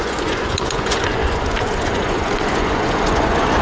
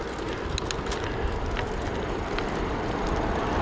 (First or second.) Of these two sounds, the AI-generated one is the first